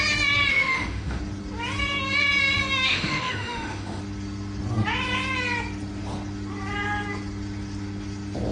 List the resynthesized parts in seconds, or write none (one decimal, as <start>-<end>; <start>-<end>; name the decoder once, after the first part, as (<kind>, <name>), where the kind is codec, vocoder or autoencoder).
0.5-1.2 (autoencoder, DAC-VAE); 2.9-4.0